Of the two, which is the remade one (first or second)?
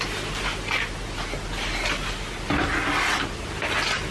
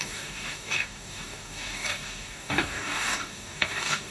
second